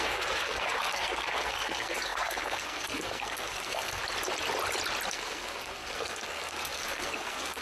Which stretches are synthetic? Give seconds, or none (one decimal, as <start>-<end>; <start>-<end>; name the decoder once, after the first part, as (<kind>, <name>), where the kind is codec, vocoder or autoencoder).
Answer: 0.0-4.0 (codec, SNAC); 5.1-7.6